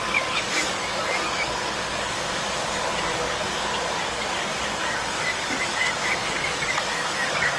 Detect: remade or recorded remade